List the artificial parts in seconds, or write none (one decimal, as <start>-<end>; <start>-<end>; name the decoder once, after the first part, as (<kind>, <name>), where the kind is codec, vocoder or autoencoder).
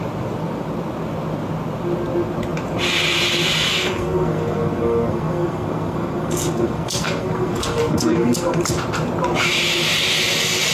3.7-8.6 (codec, SNAC)